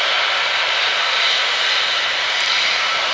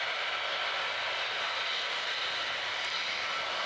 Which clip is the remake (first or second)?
first